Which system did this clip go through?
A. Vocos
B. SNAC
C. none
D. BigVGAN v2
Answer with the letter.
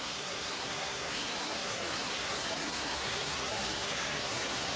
B